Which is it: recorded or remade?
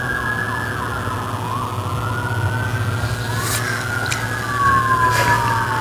recorded